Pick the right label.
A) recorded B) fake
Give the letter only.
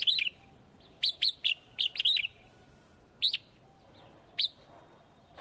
A